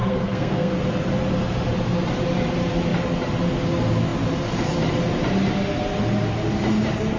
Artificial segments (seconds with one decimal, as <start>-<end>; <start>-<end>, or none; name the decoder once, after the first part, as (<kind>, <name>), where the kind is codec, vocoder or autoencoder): 0.0-0.8 (codec, SNAC)